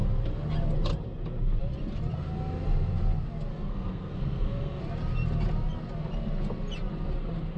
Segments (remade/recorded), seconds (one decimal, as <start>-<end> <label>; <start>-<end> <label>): 0.0-3.5 recorded; 3.5-4.8 remade; 4.8-7.6 recorded